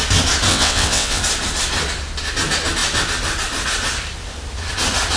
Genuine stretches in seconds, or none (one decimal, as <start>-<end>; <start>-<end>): 0.0-0.5; 1.2-5.2